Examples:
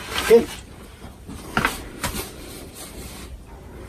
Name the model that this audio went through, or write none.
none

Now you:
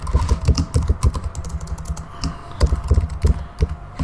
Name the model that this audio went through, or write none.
none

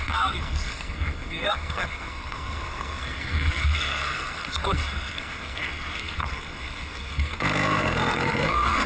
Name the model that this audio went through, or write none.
codec, SNAC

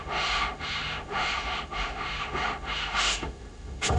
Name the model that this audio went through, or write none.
autoencoder, DAC-VAE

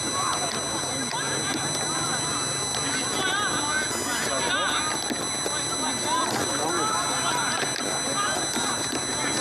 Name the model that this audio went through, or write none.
none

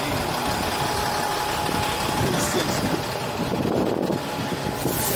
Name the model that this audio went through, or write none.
none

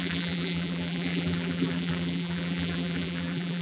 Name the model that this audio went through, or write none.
vocoder, BigVGAN v2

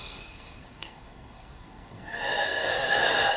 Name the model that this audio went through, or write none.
codec, SNAC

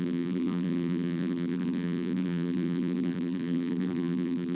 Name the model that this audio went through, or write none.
vocoder, BigVGAN v2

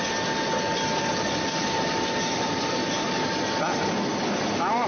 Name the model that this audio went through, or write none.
none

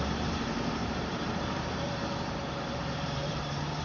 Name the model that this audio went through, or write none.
vocoder, BigVGAN v2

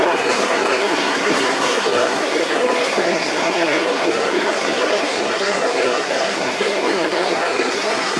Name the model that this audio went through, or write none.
codec, SNAC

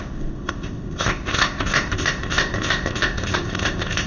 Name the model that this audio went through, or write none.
codec, ZipCodec